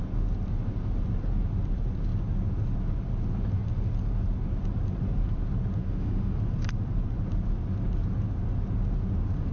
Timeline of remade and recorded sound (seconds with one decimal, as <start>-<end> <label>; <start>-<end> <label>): 0.0-5.8 recorded; 5.8-6.4 remade; 6.4-9.5 recorded